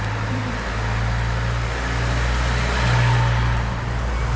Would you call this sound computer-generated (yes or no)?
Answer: no